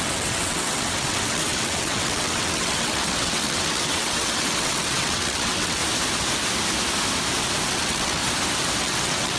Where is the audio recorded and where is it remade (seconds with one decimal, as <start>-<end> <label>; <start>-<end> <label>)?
0.0-5.8 remade; 5.8-7.7 recorded; 7.7-8.2 remade; 8.2-8.8 recorded; 8.8-9.4 remade